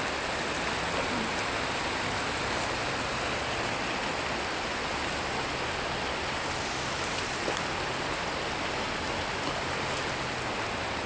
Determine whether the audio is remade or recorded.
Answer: recorded